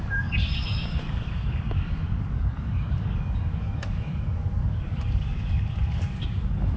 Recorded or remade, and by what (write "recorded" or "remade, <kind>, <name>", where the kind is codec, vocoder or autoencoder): remade, codec, DAC